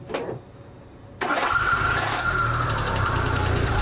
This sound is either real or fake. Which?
fake